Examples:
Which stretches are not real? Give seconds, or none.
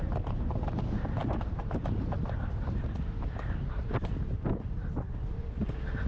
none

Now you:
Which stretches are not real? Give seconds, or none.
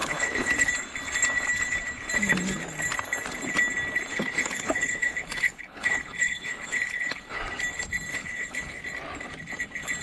0.0-0.7 (codec, HILCodec); 4.1-7.4; 8.1-8.8